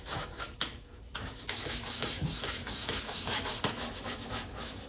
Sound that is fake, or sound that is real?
fake